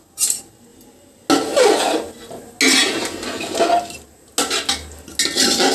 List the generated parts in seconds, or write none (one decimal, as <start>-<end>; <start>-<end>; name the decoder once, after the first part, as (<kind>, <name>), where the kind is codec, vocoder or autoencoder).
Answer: none